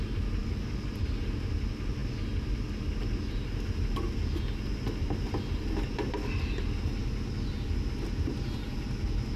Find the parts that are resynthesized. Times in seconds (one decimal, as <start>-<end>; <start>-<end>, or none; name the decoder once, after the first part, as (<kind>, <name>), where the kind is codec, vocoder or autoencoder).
0.4-0.9 (codec, DAC)